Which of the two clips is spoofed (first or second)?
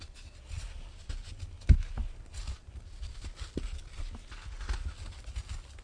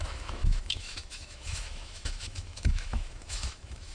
second